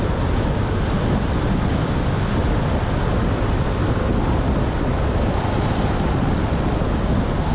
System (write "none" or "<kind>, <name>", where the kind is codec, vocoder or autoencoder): none